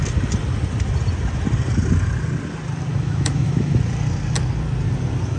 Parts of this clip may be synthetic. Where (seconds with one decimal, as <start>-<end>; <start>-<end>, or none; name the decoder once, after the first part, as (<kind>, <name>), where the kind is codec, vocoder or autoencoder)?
2.9-3.8 (autoencoder, DAC-VAE)